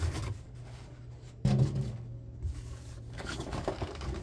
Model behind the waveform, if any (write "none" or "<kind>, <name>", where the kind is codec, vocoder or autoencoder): codec, DAC